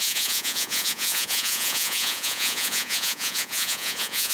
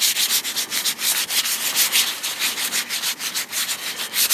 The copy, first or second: first